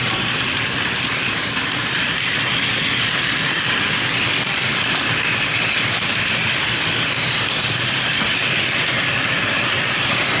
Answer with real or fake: real